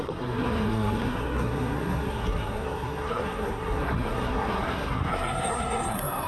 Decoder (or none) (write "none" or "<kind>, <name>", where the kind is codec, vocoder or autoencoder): codec, SNAC